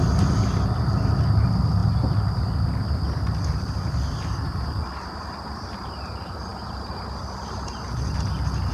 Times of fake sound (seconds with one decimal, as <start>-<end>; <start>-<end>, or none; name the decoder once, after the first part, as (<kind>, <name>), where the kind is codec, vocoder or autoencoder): none

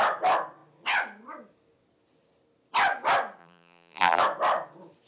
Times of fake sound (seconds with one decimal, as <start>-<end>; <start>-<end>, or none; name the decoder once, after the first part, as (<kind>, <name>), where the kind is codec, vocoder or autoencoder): 3.4-4.2 (vocoder, BigVGAN v2)

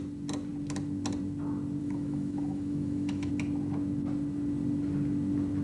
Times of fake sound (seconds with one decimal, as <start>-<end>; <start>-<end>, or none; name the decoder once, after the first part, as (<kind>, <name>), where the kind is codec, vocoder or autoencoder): 1.8-3.3 (autoencoder, DAC-VAE)

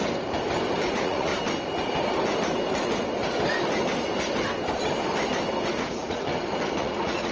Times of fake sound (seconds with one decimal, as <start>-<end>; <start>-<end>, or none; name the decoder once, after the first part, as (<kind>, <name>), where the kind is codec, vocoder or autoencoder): 0.9-1.3 (vocoder, Vocos); 5.7-6.3; 6.8-7.3

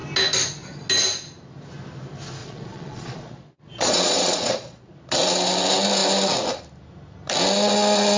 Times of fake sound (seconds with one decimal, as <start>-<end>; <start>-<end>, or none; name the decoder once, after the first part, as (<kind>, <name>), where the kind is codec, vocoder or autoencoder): 2.4-4.9 (vocoder, Vocos)